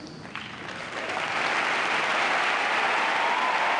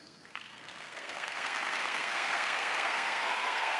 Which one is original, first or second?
first